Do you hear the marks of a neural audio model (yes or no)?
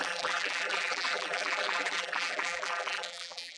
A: yes